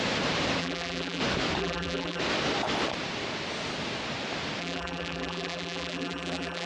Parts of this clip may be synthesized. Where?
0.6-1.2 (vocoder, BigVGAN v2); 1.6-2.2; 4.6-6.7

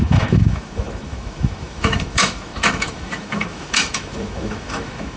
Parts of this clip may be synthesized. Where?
0.0-5.2 (autoencoder, DAC-VAE)

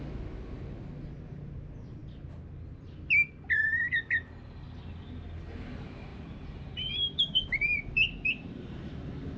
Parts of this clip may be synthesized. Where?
6.1-9.4 (vocoder, BigVGAN v2)

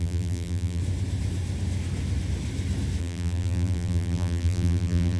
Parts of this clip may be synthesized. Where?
0.0-0.8 (vocoder, BigVGAN v2); 3.0-5.2